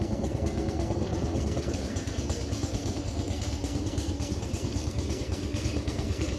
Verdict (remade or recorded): remade